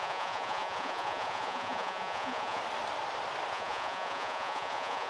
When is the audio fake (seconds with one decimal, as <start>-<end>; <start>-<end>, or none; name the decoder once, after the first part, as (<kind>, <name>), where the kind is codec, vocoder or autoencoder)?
0.0-2.6 (vocoder, Vocos); 3.5-5.1